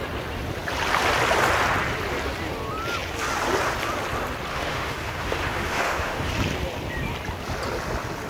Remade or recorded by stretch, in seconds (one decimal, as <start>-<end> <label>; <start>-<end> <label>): 0.0-4.5 recorded; 4.5-6.3 remade; 6.3-8.3 recorded